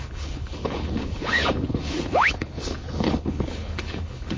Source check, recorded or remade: remade